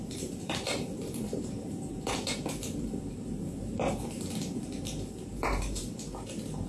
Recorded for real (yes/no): no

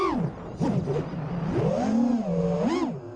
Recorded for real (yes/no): yes